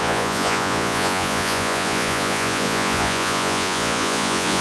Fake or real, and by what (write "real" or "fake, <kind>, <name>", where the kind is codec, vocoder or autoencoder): fake, vocoder, Vocos